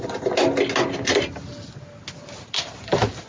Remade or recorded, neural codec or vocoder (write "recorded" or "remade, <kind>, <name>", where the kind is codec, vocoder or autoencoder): recorded